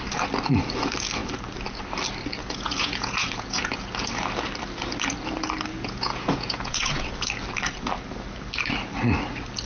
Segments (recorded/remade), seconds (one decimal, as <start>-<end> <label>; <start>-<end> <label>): 0.0-2.4 recorded; 2.4-3.9 remade; 3.9-5.7 recorded; 5.7-7.3 remade; 7.3-9.7 recorded